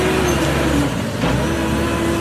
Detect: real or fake real